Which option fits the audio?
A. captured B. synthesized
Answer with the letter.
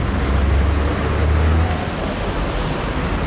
A